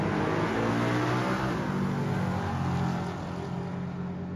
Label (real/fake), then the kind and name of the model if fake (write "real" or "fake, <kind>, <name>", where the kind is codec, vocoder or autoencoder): real